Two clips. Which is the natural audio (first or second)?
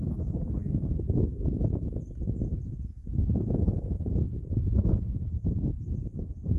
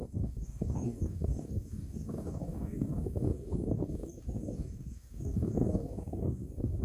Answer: first